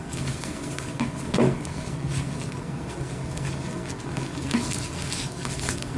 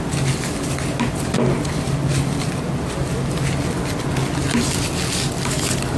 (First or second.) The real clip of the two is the second